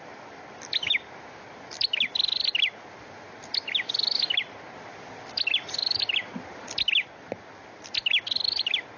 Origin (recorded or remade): recorded